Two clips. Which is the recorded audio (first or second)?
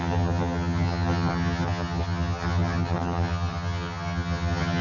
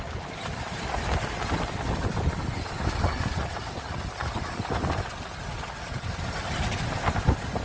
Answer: second